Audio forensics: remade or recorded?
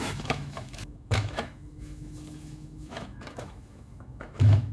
remade